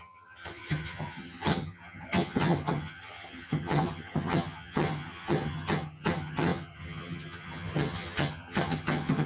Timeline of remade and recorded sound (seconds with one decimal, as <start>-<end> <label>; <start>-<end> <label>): 0.0-9.3 remade